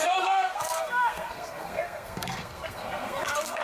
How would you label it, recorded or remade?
remade